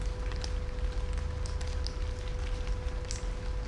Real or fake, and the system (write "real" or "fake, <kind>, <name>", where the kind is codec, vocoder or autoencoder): real